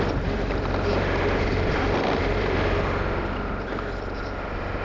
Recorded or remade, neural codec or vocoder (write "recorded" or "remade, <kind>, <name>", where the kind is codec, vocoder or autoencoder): recorded